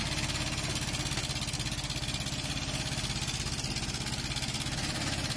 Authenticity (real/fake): real